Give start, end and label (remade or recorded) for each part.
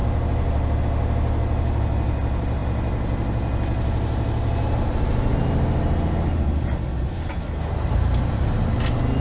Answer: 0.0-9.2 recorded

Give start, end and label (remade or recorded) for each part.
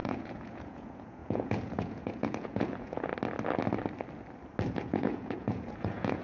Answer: 0.0-3.1 remade; 3.1-4.7 recorded; 4.7-6.2 remade